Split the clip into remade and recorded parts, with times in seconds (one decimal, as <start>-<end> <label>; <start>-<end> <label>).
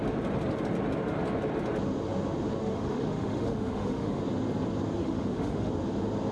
0.0-2.6 recorded; 2.6-4.2 remade; 4.2-5.0 recorded; 5.0-5.7 remade; 5.7-6.3 recorded